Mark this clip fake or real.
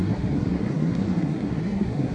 fake